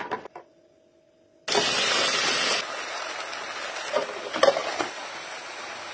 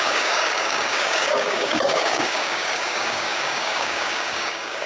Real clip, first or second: first